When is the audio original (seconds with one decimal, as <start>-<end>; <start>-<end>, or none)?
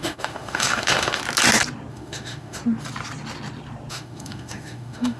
1.2-1.9; 2.6-3.9